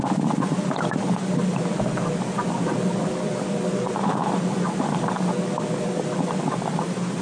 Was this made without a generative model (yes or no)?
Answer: yes